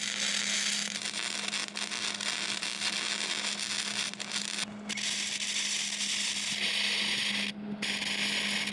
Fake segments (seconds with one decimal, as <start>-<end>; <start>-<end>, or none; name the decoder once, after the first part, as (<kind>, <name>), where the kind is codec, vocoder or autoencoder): none

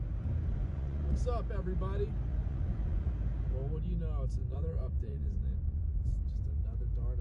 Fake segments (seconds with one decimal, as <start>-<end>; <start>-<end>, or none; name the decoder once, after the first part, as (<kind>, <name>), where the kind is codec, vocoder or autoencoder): 0.5-1.2 (vocoder, Vocos); 2.3-3.1; 4.4-6.6

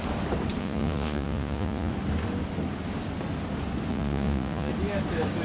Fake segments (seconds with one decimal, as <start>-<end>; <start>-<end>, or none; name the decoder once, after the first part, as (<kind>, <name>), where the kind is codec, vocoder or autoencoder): 0.6-1.9 (vocoder, Vocos); 3.9-4.7